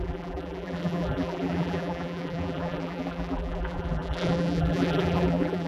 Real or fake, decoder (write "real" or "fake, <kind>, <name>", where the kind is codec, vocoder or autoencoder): fake, vocoder, BigVGAN v2